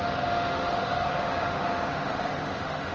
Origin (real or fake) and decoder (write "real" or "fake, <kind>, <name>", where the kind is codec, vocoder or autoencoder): fake, autoencoder, DAC-VAE